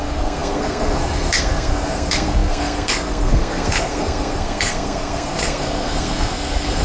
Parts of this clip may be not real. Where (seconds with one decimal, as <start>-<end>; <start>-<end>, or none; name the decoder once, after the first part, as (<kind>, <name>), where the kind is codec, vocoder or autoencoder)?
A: 0.0-6.8 (codec, SNAC)